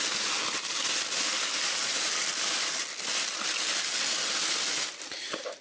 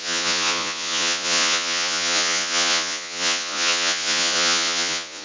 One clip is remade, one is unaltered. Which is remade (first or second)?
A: second